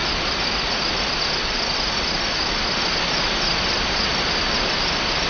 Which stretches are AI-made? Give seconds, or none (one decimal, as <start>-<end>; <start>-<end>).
none